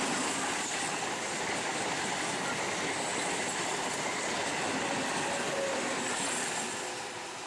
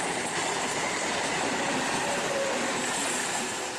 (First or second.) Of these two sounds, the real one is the first